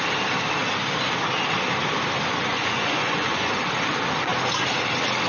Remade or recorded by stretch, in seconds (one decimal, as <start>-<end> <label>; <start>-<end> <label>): 0.0-2.5 recorded; 2.5-3.5 remade; 3.5-5.3 recorded